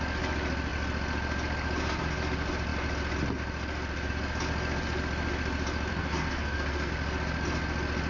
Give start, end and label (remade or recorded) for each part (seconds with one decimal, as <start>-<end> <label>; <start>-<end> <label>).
0.0-5.9 recorded; 5.9-6.9 remade; 6.9-8.1 recorded